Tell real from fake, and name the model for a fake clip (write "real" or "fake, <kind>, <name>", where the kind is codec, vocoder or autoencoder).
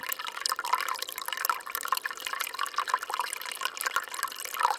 real